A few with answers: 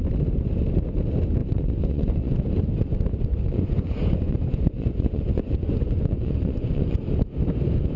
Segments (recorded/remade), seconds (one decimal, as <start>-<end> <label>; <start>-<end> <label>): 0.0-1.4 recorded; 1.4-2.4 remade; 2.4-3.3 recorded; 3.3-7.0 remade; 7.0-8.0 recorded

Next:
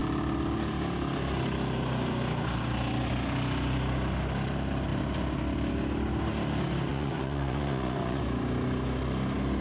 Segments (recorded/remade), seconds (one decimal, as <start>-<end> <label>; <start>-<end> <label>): 0.0-6.9 recorded; 6.9-8.2 remade; 8.2-9.6 recorded

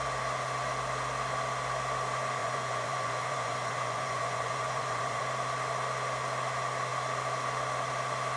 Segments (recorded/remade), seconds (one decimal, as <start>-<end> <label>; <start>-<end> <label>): 0.0-2.4 recorded; 2.4-5.2 remade; 5.2-8.4 recorded

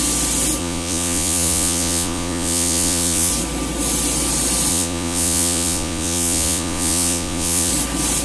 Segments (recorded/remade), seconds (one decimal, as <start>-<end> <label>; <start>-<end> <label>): 0.0-0.6 recorded; 0.6-3.3 remade; 3.3-4.7 recorded; 4.7-7.7 remade; 7.7-8.2 recorded

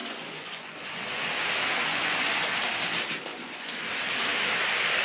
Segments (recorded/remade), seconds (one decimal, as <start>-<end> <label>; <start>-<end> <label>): 0.0-1.3 remade; 1.3-1.9 recorded; 1.9-2.6 remade; 2.6-3.3 recorded; 3.3-3.8 remade; 3.8-5.0 recorded

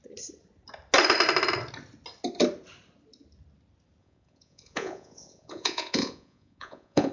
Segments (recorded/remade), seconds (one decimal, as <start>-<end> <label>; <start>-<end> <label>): 0.0-4.0 recorded; 4.0-7.1 remade

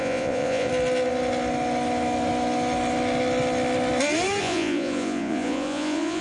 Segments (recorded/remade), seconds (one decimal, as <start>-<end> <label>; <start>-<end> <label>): 0.0-0.7 remade; 0.7-4.4 recorded; 4.4-6.2 remade